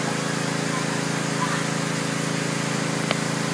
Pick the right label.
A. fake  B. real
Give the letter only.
B